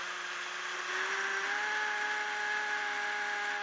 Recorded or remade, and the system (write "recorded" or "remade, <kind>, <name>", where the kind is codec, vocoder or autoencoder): recorded